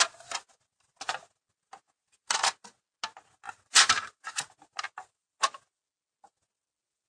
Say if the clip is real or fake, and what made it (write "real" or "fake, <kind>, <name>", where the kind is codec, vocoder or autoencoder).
real